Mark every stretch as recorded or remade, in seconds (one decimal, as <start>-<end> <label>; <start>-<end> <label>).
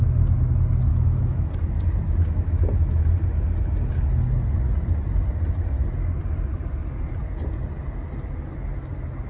0.0-0.9 recorded; 0.9-1.5 remade; 1.5-9.3 recorded